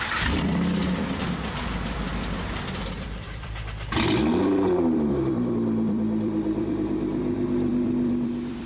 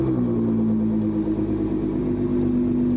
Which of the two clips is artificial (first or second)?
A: first